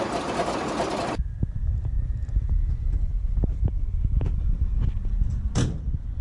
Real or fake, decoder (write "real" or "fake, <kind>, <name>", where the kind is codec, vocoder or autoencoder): real